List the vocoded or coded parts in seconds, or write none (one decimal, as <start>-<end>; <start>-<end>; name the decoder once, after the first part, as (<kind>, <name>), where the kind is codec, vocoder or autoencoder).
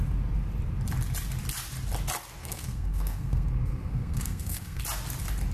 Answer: 2.4-4.8 (codec, SNAC)